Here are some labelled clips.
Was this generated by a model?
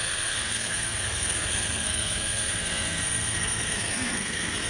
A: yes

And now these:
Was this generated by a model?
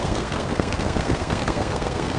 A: yes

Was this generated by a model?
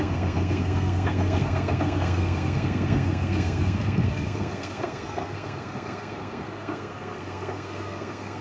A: yes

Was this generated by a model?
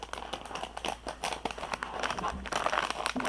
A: no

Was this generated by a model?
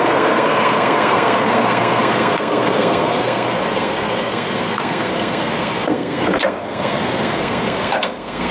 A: yes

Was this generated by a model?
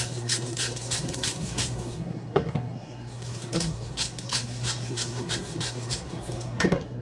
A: yes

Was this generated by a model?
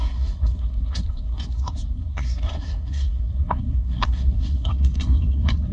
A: yes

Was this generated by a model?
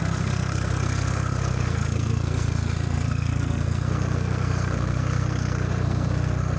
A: yes